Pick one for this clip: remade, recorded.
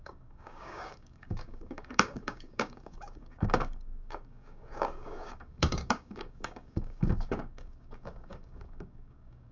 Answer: remade